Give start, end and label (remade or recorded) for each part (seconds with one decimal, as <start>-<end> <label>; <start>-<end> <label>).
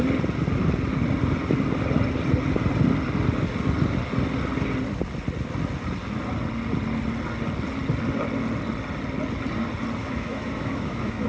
0.0-10.0 recorded; 10.0-11.3 remade